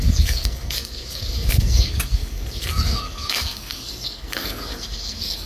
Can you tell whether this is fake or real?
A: fake